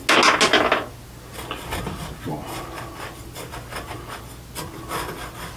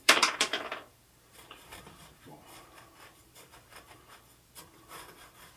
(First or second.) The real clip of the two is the first